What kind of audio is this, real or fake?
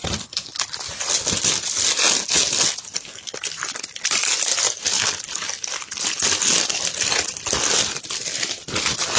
real